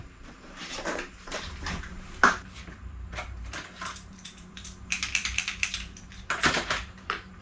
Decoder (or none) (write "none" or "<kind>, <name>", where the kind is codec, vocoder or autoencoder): vocoder, BigVGAN v2